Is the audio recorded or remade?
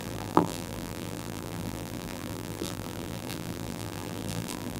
remade